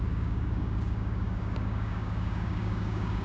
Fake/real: fake